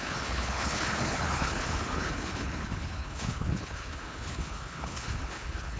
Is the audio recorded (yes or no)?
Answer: no